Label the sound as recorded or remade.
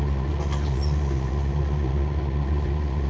remade